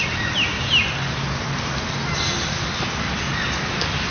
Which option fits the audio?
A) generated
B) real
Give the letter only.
B